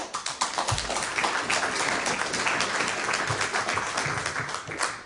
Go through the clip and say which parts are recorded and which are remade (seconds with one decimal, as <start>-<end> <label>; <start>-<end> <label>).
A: 0.0-5.1 recorded